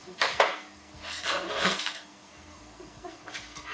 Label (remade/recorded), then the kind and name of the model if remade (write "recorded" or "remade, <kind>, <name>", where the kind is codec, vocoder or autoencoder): remade, codec, SNAC